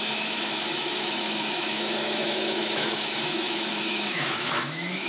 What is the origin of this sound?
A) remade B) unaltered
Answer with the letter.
A